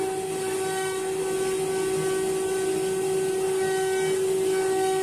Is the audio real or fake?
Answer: real